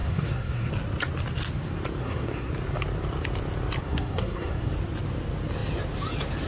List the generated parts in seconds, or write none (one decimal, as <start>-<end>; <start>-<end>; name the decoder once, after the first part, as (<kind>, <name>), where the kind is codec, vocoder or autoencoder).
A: 0.0-0.7 (codec, SNAC); 2.0-2.5; 3.8-4.7